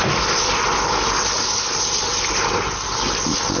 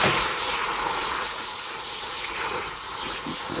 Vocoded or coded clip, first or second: second